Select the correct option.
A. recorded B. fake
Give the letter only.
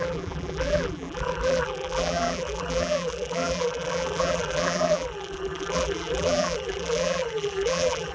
B